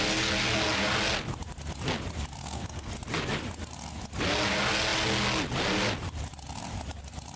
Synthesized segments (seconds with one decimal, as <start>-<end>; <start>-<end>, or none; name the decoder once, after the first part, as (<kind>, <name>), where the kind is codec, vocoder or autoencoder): 2.4-2.9 (codec, SNAC)